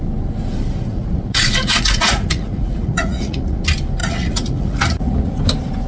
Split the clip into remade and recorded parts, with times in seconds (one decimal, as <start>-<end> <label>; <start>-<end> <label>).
0.0-0.9 recorded; 0.9-3.6 remade; 3.6-4.0 recorded; 4.0-5.3 remade; 5.3-5.9 recorded